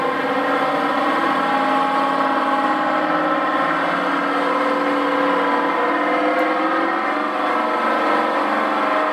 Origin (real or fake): real